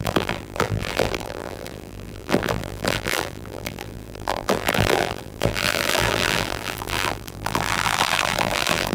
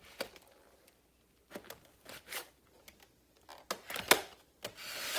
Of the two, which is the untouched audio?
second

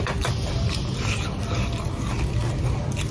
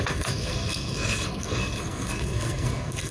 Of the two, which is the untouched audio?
first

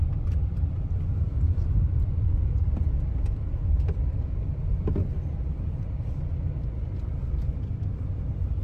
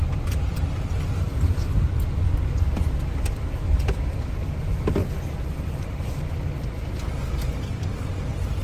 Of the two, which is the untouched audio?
second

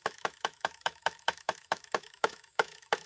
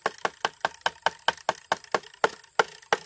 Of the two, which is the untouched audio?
second